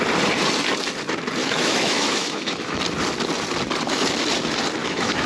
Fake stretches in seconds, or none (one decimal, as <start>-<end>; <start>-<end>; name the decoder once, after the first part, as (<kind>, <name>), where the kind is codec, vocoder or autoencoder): 1.4-2.8 (autoencoder, DAC-VAE); 4.8-5.3